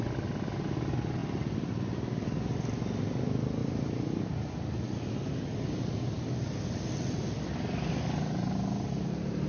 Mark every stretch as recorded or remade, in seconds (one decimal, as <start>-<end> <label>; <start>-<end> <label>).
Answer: 0.0-1.2 recorded; 1.2-1.7 remade; 1.7-9.5 recorded